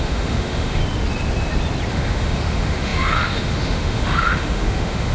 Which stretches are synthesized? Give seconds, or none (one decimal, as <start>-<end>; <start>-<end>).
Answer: 0.0-0.8; 1.9-5.1